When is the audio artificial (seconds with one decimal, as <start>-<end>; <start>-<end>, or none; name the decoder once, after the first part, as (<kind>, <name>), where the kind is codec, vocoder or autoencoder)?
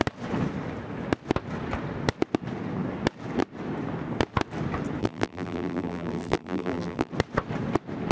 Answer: 5.0-7.1 (vocoder, BigVGAN v2)